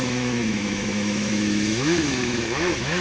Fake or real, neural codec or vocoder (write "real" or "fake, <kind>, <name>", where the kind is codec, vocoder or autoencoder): fake, autoencoder, DAC-VAE